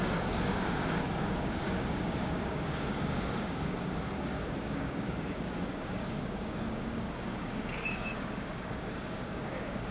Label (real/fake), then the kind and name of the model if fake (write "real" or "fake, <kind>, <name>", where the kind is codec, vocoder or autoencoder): fake, codec, DAC